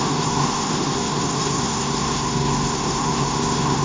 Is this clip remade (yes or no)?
yes